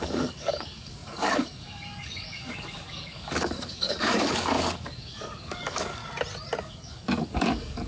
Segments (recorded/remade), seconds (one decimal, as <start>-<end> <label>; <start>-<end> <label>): 0.0-6.0 remade; 6.0-6.6 recorded; 6.6-7.9 remade

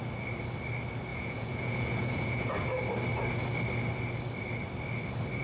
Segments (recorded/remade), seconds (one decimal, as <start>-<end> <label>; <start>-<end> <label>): 0.0-1.1 recorded; 1.1-2.5 remade; 2.5-5.4 recorded

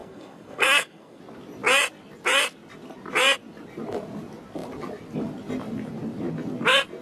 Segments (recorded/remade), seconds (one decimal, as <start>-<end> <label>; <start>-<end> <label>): 0.0-1.2 remade; 1.2-7.0 recorded

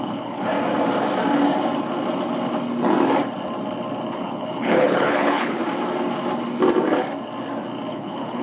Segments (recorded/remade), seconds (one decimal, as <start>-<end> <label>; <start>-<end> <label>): 0.0-0.5 remade; 0.5-4.1 recorded; 4.1-5.6 remade; 5.6-7.9 recorded; 7.9-8.4 remade

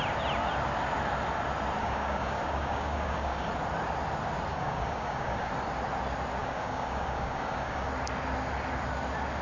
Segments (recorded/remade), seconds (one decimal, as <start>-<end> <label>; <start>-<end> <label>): 0.0-1.8 recorded; 1.8-3.5 remade; 3.5-4.5 recorded; 4.5-5.5 remade; 5.5-6.4 recorded; 6.4-7.9 remade; 7.9-9.4 recorded